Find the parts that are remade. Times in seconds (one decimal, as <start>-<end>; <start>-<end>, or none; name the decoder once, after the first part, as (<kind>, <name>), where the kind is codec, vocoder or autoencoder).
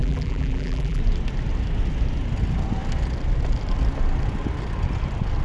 0.0-1.0 (vocoder, BigVGAN v2)